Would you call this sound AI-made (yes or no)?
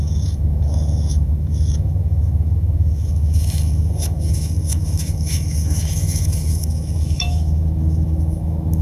yes